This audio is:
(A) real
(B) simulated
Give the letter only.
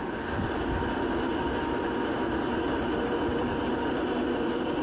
B